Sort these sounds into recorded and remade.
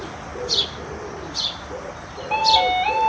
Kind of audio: recorded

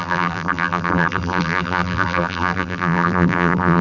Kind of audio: remade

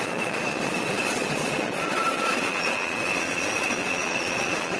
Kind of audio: remade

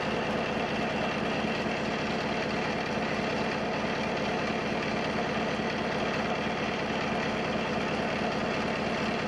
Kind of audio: recorded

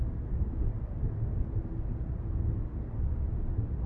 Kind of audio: recorded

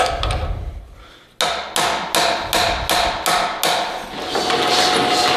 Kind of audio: recorded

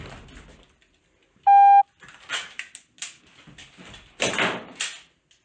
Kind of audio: recorded